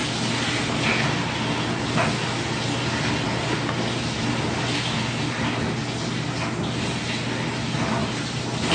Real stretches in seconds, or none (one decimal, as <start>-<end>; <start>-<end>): 0.0-8.0